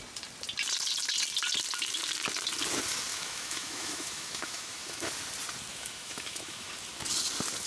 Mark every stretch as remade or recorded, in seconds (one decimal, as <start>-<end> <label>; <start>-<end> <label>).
0.0-3.1 recorded; 3.1-5.1 remade; 5.1-5.7 recorded; 5.7-6.7 remade; 6.7-7.7 recorded